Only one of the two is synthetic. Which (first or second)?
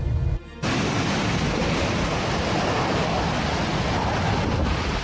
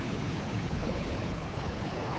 second